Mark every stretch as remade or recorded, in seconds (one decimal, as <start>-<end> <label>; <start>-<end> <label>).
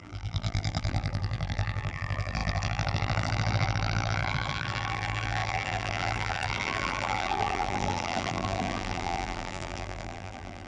0.0-10.7 remade